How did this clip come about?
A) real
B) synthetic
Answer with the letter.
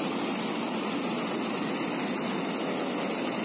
A